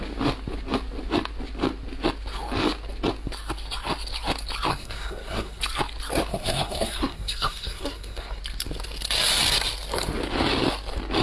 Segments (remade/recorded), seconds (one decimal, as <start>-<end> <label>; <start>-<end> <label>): 0.0-4.7 recorded; 4.7-5.6 remade; 5.6-6.3 recorded; 6.3-8.4 remade; 8.4-11.2 recorded